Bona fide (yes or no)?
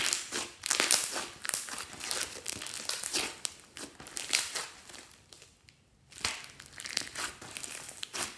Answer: yes